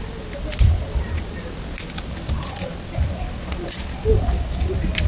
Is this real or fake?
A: real